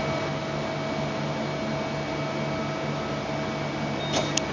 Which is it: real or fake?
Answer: real